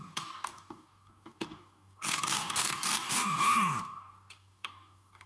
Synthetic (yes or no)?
yes